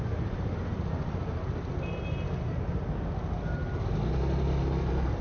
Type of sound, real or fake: real